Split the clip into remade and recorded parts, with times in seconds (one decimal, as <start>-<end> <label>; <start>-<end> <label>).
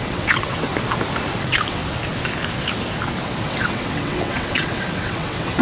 0.0-0.7 remade; 0.7-1.4 recorded; 1.4-1.8 remade; 1.8-3.4 recorded; 3.4-5.6 remade